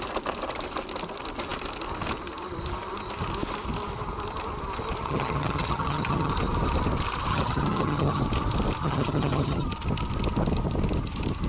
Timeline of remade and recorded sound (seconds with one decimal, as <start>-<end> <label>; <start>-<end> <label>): 0.0-5.0 recorded; 5.0-6.3 remade; 6.3-7.3 recorded; 7.3-8.2 remade; 8.2-8.8 recorded; 8.8-9.7 remade; 9.7-11.5 recorded